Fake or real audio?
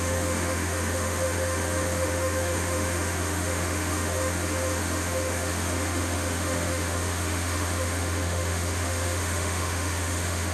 fake